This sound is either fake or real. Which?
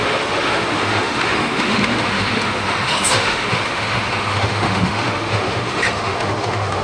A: fake